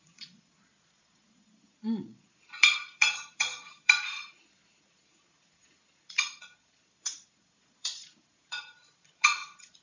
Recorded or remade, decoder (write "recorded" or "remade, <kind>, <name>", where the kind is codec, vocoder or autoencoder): remade, vocoder, Vocos